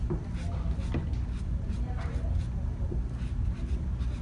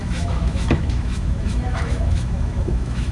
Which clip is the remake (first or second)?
second